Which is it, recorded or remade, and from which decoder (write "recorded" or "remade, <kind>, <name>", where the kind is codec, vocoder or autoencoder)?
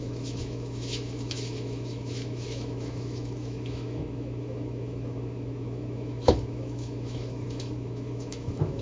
remade, autoencoder, DAC-VAE